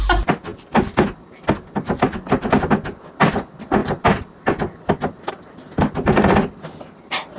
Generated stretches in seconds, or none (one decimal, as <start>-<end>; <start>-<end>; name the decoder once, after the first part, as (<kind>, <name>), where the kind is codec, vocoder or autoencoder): none